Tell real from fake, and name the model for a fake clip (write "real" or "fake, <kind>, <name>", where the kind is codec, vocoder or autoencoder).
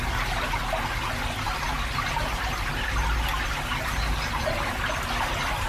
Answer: real